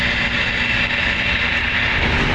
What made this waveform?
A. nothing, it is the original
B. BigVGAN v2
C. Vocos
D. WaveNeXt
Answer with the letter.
A